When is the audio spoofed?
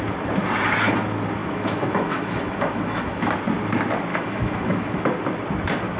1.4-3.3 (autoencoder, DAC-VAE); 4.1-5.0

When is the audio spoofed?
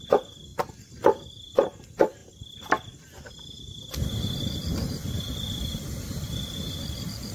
none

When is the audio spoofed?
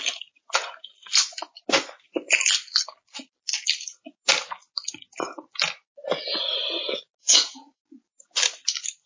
7.2-7.8 (vocoder, Vocos)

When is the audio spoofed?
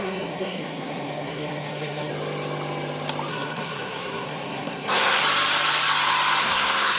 0.0-2.1 (codec, SNAC); 3.3-5.2; 6.4-7.0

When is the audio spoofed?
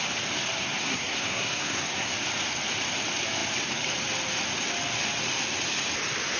0.8-2.1 (codec, SNAC)